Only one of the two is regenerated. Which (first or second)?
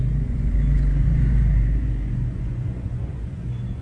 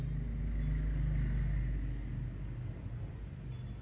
first